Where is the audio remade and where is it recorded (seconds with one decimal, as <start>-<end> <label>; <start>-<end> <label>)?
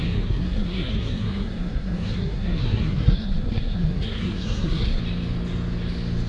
0.0-5.0 remade; 5.0-6.3 recorded